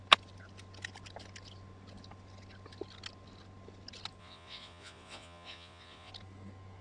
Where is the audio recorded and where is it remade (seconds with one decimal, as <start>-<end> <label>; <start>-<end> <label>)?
0.0-4.2 recorded; 4.2-6.1 remade; 6.1-6.8 recorded